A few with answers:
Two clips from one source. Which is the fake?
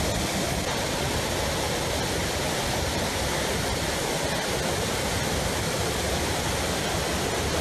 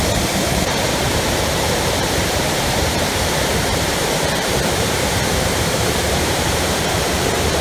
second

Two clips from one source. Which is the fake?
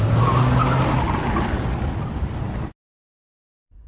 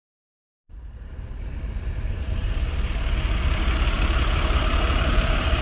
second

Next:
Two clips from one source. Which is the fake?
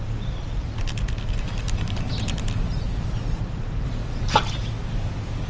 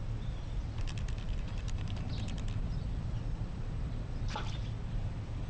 second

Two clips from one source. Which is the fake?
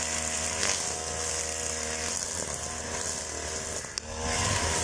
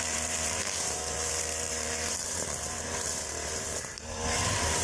second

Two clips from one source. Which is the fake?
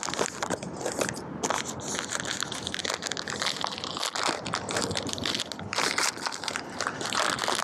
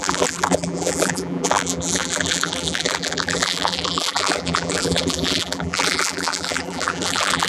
second